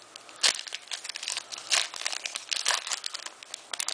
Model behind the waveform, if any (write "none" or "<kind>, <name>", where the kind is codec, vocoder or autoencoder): none